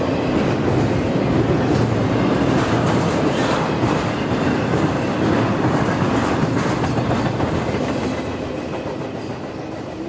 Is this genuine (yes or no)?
yes